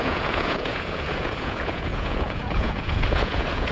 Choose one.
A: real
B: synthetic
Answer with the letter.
B